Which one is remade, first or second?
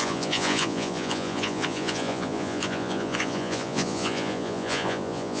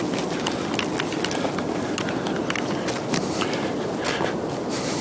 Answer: first